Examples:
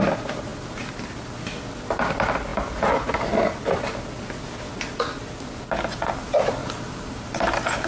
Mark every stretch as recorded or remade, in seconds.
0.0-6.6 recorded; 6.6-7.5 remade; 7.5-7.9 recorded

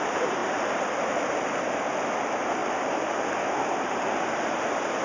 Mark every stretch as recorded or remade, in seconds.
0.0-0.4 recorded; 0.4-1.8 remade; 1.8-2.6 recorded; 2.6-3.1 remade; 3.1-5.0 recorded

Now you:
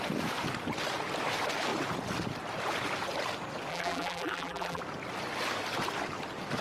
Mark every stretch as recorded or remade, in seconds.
0.0-3.7 recorded; 3.7-4.8 remade; 4.8-6.6 recorded

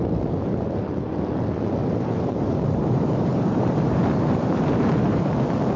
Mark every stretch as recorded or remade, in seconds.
0.0-1.8 recorded; 1.8-5.3 remade; 5.3-5.8 recorded

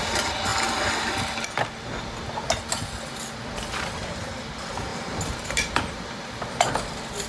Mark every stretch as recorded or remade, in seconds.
0.0-4.9 recorded; 4.9-6.7 remade; 6.7-7.3 recorded